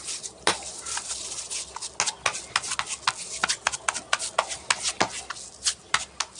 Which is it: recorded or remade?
recorded